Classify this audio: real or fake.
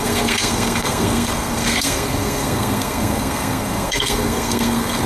fake